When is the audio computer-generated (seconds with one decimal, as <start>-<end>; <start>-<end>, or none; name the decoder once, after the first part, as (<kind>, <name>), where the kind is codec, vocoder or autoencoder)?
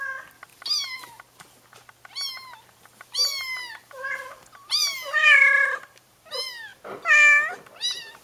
3.6-6.3 (vocoder, BigVGAN v2)